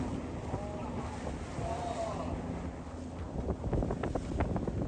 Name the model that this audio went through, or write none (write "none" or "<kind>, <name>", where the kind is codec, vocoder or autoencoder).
none